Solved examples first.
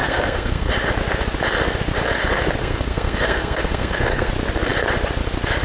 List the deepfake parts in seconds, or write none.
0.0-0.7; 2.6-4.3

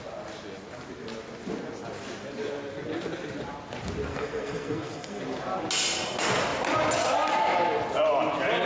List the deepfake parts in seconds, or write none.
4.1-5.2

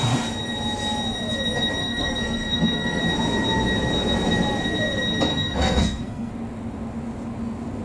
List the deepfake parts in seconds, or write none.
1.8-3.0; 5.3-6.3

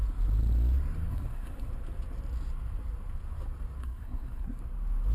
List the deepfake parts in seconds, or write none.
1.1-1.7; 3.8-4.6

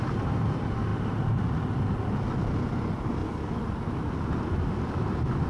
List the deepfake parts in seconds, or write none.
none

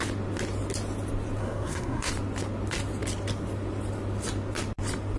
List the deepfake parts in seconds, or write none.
1.4-2.1